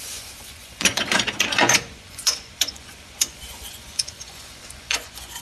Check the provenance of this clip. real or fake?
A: fake